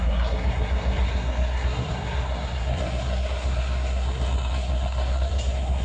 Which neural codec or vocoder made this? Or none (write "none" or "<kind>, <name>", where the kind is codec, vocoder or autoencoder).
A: codec, SNAC